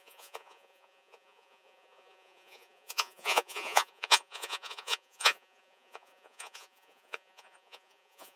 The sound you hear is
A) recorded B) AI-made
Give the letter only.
B